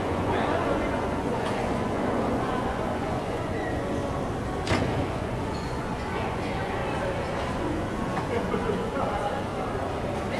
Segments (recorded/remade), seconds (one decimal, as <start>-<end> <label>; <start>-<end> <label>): 0.0-4.0 remade; 4.0-4.6 recorded; 4.6-6.8 remade; 6.8-7.5 recorded; 7.5-9.5 remade; 9.5-10.4 recorded